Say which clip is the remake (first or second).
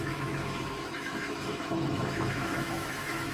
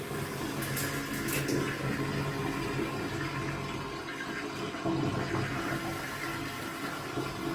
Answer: first